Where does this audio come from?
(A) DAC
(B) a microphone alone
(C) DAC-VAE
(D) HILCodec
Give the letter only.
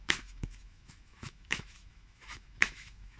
C